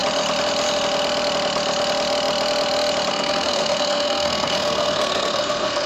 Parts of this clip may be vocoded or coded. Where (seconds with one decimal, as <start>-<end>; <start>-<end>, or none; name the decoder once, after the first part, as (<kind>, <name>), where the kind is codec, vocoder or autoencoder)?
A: 3.1-5.9 (codec, SNAC)